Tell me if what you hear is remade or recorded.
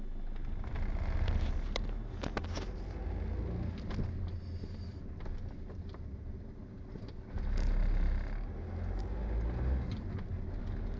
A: recorded